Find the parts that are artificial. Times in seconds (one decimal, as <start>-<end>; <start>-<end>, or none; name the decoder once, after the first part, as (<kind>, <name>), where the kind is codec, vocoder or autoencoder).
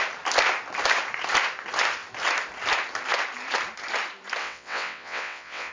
4.4-5.7 (vocoder, WaveNeXt)